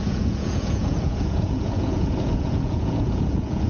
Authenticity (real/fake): fake